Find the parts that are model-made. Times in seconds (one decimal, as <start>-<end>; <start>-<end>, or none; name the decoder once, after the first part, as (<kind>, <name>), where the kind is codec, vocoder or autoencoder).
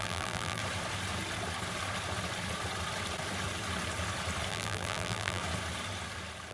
0.0-0.6 (vocoder, BigVGAN v2); 4.5-5.4